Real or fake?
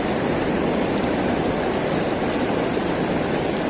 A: real